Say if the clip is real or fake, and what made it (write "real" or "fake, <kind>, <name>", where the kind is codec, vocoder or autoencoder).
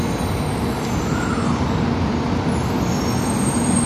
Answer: real